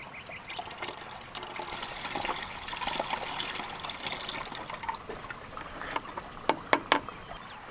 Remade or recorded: recorded